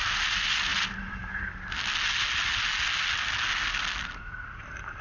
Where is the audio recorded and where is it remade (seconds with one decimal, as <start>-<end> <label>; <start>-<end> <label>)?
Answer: 0.0-0.7 recorded; 0.7-1.4 remade; 1.4-5.0 recorded